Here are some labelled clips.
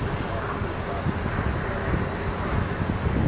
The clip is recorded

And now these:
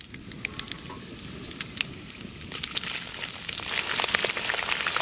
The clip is recorded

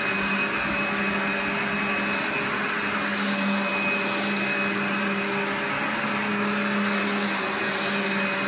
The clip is recorded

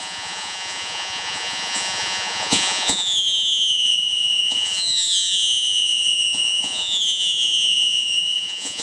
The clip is remade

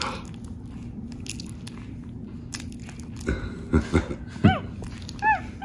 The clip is recorded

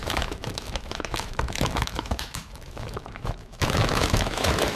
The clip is remade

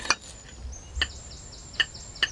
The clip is recorded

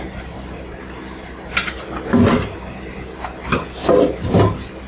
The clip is recorded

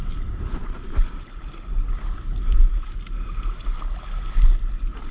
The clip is recorded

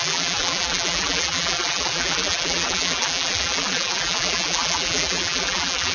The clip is remade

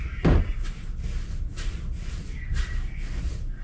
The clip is remade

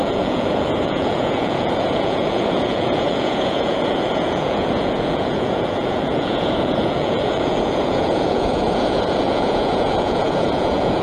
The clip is remade